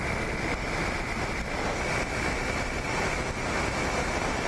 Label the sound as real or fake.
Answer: real